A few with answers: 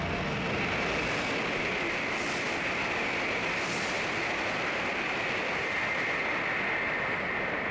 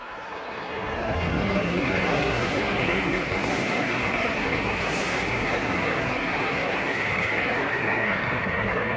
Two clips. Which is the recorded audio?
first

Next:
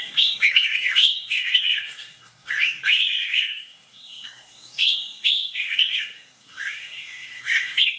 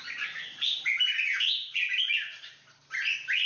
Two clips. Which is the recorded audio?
second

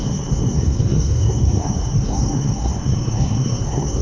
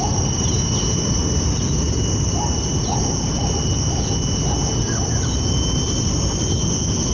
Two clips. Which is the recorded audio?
second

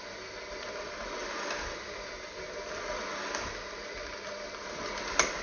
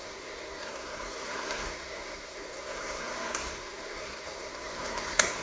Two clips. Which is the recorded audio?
first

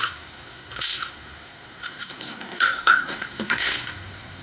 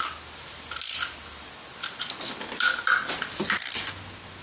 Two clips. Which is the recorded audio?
second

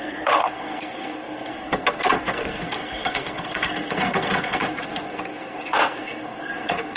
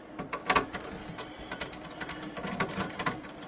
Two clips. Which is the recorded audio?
second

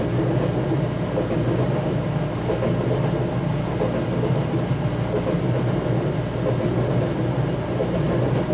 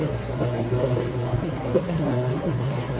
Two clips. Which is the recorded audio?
first